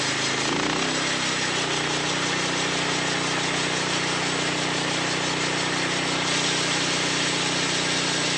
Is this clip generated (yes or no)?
no